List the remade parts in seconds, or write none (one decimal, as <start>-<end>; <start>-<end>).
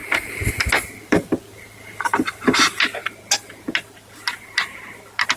0.0-2.8